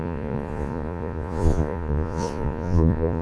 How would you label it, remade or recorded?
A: remade